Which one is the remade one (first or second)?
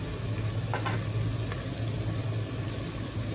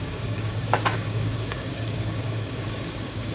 second